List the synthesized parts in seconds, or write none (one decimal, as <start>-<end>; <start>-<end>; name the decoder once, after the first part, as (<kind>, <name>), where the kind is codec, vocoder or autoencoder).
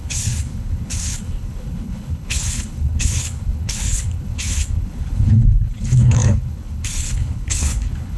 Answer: 0.0-8.2 (codec, HILCodec)